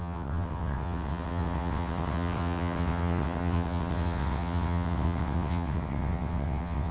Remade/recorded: remade